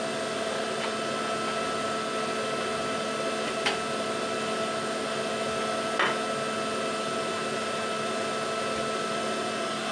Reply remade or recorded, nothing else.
recorded